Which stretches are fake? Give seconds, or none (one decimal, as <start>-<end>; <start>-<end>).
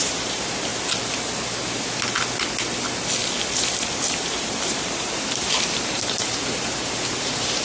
0.0-0.7; 3.9-7.6